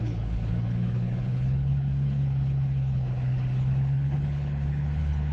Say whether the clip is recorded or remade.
remade